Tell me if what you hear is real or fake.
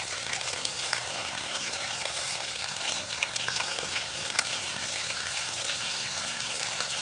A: fake